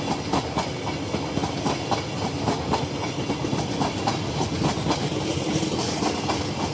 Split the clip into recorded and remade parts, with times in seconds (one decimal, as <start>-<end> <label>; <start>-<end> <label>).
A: 0.0-6.7 recorded